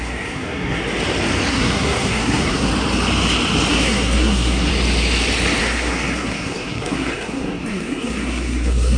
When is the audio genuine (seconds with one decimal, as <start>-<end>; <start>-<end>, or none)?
0.8-1.5; 2.7-3.7; 4.7-5.6